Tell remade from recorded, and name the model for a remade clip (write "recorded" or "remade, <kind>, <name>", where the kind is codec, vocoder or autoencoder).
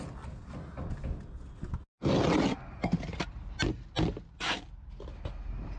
recorded